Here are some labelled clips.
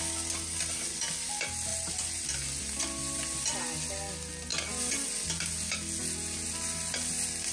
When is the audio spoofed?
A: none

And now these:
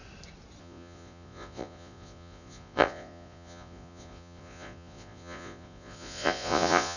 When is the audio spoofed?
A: 0.6-7.0 (vocoder, Vocos)